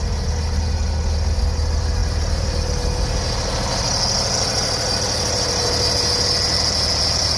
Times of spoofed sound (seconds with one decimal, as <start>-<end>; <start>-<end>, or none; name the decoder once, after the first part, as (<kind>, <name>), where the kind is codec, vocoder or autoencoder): none